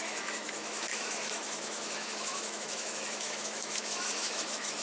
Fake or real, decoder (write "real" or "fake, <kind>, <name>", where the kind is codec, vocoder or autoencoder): fake, autoencoder, DAC-VAE